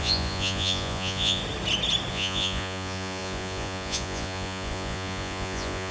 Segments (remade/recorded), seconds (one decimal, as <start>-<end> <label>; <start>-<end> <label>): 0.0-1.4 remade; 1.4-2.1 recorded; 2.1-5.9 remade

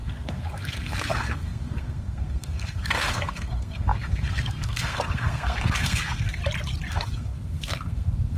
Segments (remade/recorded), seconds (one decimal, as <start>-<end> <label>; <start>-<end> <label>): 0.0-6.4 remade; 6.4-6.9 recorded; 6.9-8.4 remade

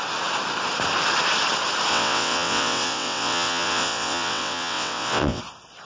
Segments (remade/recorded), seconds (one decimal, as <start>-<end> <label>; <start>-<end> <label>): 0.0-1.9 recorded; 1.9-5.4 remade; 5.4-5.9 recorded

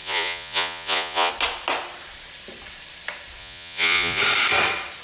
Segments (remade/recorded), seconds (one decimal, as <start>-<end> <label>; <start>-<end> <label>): 0.0-1.3 remade; 1.3-3.4 recorded; 3.4-4.2 remade; 4.2-5.0 recorded

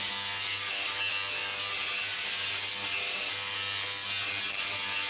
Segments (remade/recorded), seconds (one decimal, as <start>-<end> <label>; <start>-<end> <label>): 0.0-5.1 recorded

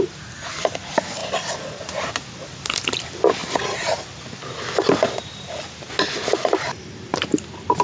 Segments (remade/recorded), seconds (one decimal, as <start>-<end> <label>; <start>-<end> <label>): 0.0-7.8 recorded

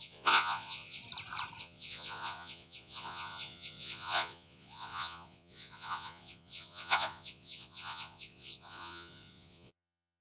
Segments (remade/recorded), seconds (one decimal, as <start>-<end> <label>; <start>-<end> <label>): 0.0-1.0 remade; 1.0-1.6 recorded; 1.6-10.2 remade

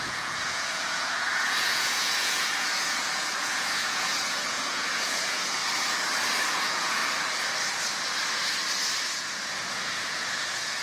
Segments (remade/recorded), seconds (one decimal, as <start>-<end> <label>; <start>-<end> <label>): 0.0-5.6 remade; 5.6-6.5 recorded; 6.5-7.0 remade; 7.0-9.2 recorded; 9.2-10.8 remade